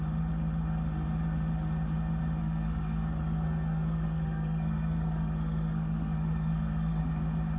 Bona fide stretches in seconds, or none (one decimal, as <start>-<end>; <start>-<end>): 0.0-2.4; 7.0-7.6

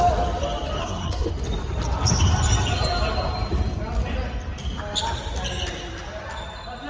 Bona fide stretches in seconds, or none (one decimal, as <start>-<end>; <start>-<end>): 0.0-0.8; 1.3-6.9

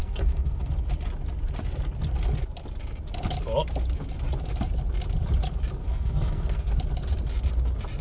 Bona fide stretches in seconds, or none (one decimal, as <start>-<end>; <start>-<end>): 0.7-5.8; 6.7-8.0

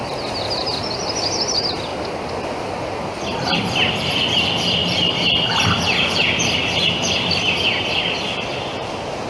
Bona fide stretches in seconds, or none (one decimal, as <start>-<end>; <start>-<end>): 0.0-9.3

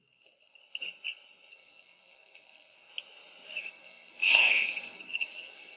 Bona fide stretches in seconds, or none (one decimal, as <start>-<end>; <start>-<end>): 0.6-1.5; 2.9-3.6

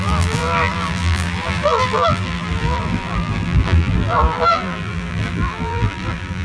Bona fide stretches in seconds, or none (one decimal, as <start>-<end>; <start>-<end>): none